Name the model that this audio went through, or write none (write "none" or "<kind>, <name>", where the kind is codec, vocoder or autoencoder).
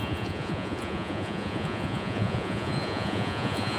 vocoder, Vocos